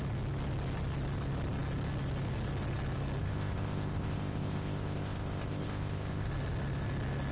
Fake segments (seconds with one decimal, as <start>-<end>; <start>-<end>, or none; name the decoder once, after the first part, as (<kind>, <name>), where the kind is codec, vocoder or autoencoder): 3.2-6.3 (codec, ZipCodec)